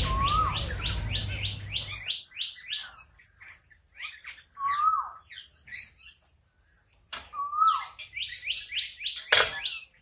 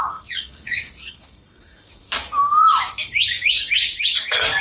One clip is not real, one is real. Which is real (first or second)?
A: first